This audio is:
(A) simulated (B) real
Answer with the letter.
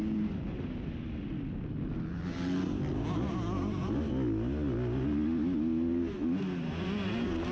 B